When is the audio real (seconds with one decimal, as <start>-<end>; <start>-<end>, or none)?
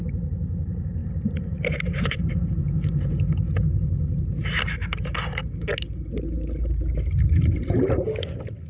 0.0-1.0; 2.5-8.7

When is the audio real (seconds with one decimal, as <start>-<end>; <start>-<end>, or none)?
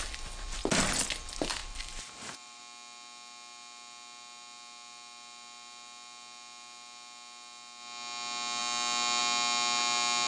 0.0-1.6; 2.6-10.3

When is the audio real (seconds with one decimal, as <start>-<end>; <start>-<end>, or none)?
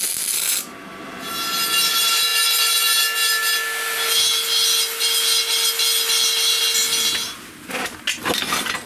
0.0-0.7; 1.3-8.9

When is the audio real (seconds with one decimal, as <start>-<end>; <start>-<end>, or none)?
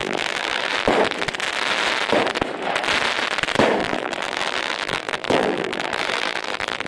0.7-3.8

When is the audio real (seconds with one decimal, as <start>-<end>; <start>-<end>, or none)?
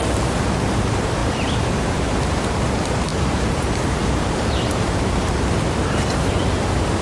0.0-1.2; 2.5-3.1; 5.3-7.0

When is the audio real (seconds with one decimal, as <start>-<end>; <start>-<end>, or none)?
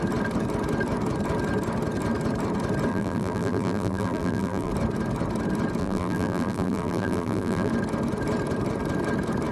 0.0-2.9; 4.7-5.8; 7.7-9.5